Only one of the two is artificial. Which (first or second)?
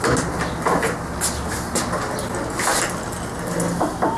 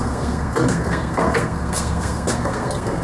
second